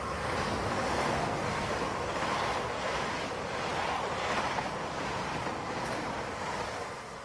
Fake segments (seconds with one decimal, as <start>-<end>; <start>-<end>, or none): 0.7-1.7